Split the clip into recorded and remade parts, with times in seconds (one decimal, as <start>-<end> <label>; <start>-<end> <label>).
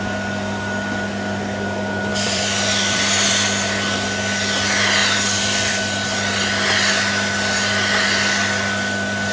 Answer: 0.0-2.1 recorded; 2.1-3.3 remade; 3.3-5.0 recorded; 5.0-5.8 remade; 5.8-9.3 recorded